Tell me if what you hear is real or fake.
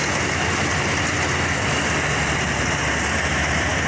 real